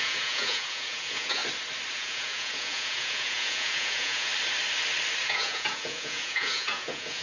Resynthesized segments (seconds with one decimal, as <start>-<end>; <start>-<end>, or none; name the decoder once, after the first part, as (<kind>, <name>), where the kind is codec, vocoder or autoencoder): 0.0-1.4 (vocoder, Vocos); 1.9-4.3; 5.2-7.2